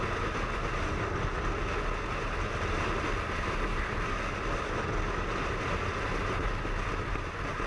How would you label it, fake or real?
real